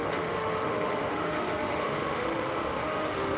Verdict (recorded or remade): remade